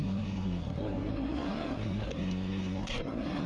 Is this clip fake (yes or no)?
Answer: yes